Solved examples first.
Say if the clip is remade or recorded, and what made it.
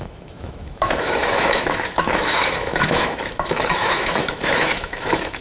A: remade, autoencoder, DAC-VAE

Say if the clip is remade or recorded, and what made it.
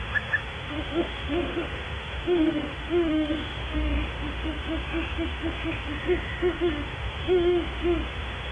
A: remade, autoencoder, DAC-VAE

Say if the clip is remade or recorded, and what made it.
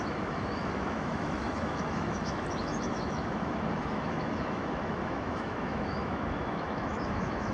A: remade, autoencoder, DAC-VAE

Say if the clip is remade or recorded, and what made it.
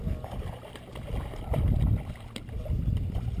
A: recorded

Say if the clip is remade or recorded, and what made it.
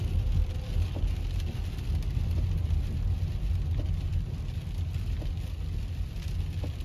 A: recorded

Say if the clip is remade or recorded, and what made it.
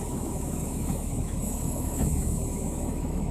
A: remade, autoencoder, DAC-VAE